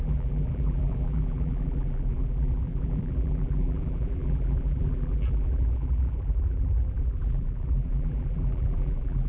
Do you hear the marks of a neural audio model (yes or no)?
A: yes